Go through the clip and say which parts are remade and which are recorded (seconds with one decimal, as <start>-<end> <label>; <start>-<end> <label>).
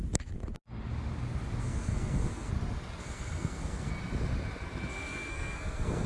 0.0-1.6 recorded; 1.6-2.5 remade; 2.5-3.0 recorded; 3.0-3.9 remade; 3.9-4.9 recorded; 4.9-6.1 remade